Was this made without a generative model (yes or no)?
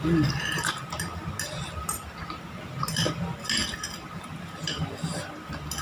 yes